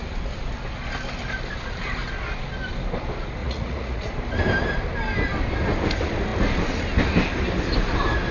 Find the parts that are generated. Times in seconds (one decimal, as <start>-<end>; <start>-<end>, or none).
3.4-4.1